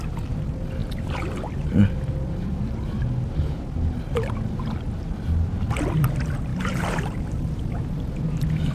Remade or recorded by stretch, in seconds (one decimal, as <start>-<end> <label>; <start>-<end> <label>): 0.0-0.8 recorded; 0.8-2.9 remade; 2.9-6.5 recorded; 6.5-7.3 remade; 7.3-8.7 recorded